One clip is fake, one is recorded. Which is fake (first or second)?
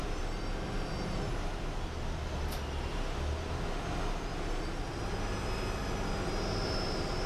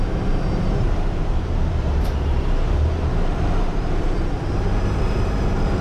second